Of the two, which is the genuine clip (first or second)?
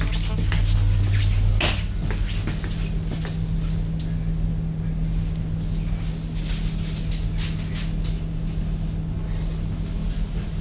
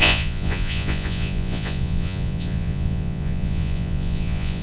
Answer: first